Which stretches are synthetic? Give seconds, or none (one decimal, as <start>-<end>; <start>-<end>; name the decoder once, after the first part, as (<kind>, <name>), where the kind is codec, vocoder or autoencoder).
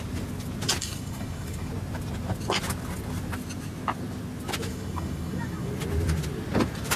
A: 0.8-1.7 (codec, DAC); 4.7-5.7